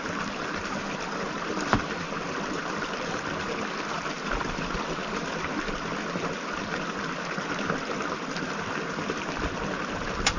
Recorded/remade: recorded